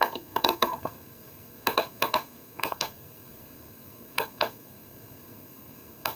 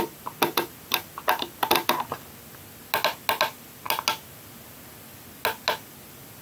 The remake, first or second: first